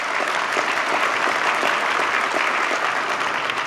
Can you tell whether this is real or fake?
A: real